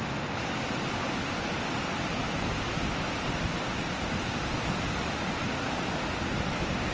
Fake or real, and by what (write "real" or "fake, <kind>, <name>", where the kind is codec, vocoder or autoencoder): real